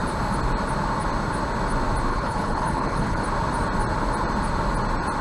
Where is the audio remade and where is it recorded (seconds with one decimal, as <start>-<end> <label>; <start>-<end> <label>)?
0.0-2.1 recorded; 2.1-3.2 remade; 3.2-5.2 recorded